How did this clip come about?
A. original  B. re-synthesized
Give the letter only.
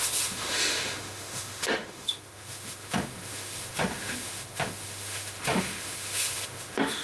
B